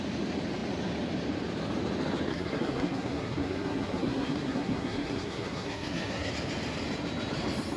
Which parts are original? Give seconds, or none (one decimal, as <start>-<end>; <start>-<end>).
0.0-2.3; 6.3-7.8